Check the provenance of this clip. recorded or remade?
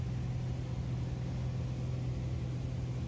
recorded